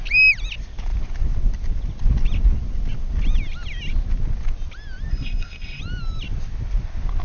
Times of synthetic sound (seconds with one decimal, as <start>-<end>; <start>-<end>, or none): 5.1-5.8